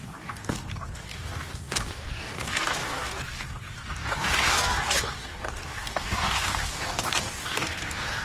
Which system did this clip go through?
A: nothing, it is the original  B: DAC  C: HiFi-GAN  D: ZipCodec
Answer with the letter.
B